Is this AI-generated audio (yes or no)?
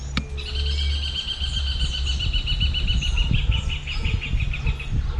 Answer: no